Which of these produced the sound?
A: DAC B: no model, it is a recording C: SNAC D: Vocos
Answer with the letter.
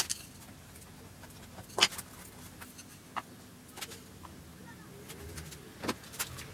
B